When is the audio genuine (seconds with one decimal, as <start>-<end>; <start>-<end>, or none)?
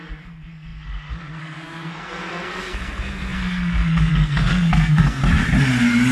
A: 5.2-6.1